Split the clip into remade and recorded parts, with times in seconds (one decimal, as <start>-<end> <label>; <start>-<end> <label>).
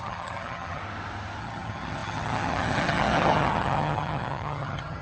0.0-0.8 remade; 0.8-1.4 recorded; 1.4-5.0 remade